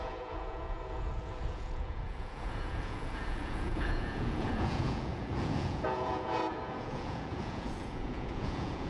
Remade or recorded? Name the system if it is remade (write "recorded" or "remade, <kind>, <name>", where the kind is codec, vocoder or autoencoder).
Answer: remade, vocoder, Vocos